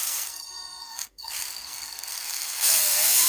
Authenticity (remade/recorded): remade